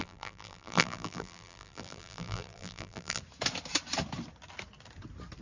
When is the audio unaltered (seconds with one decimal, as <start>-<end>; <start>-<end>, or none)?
3.2-5.4